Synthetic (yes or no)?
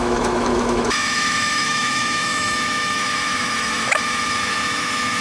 yes